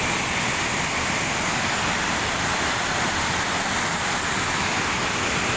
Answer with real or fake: real